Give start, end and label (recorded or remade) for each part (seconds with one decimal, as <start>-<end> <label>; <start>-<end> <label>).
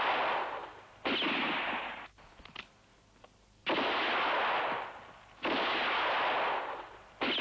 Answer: 0.0-7.4 recorded